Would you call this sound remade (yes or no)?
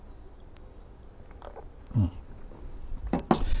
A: no